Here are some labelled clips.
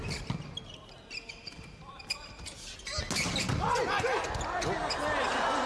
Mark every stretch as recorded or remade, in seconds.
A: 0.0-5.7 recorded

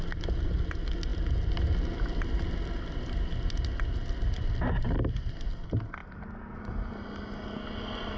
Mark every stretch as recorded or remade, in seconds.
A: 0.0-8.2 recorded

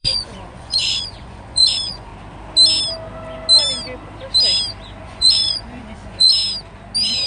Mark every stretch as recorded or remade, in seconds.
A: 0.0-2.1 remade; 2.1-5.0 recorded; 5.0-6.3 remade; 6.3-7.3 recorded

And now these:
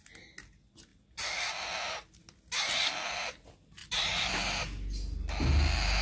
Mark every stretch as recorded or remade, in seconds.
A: 0.0-0.9 recorded; 0.9-1.9 remade; 1.9-3.8 recorded; 3.8-4.6 remade; 4.6-6.0 recorded

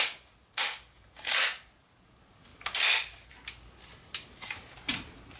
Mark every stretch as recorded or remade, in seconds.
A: 0.0-5.4 recorded

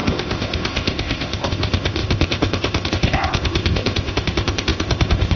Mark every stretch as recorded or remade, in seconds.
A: 0.0-5.4 remade